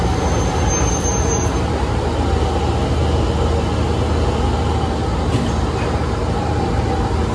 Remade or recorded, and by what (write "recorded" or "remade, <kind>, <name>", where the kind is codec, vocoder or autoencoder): recorded